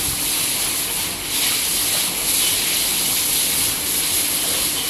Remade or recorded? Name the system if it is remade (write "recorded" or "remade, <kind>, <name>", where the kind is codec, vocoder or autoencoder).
recorded